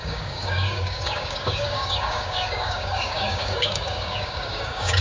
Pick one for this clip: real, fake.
fake